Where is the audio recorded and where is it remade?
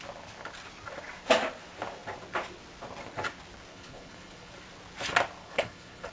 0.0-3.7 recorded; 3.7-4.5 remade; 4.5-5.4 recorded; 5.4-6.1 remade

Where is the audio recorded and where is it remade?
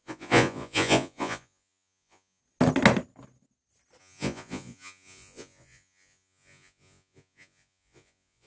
0.0-2.4 remade; 2.4-4.0 recorded; 4.0-8.5 remade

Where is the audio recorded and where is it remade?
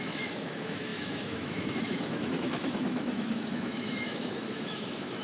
0.0-5.2 remade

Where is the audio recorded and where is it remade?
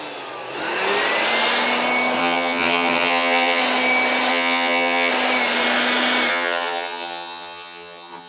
0.0-2.2 recorded; 2.2-3.6 remade; 3.6-4.3 recorded; 4.3-5.1 remade; 5.1-6.3 recorded; 6.3-8.3 remade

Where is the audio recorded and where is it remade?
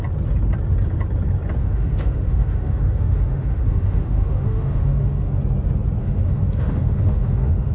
0.0-1.6 recorded; 1.6-5.4 remade; 5.4-6.0 recorded; 6.0-7.7 remade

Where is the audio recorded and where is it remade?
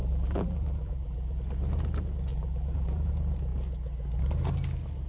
0.0-1.4 remade; 1.4-2.3 recorded; 2.3-3.1 remade; 3.1-5.1 recorded